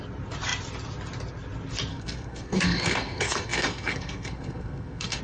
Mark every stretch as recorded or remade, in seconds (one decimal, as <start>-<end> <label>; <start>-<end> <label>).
0.0-1.9 recorded; 1.9-5.2 remade